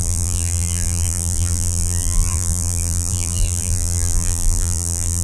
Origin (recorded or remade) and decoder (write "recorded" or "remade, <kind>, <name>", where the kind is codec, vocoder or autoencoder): remade, vocoder, BigVGAN v2